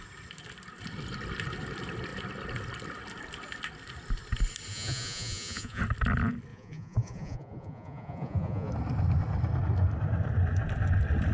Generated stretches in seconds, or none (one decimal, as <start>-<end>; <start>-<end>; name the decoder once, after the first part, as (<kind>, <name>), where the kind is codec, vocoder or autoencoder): 4.7-5.8 (vocoder, Vocos); 6.5-8.7